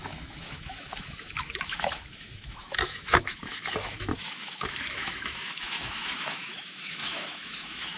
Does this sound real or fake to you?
fake